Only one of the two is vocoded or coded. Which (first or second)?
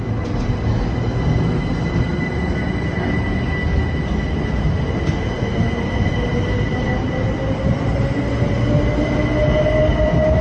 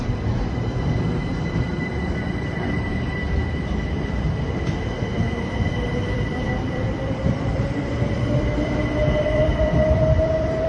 second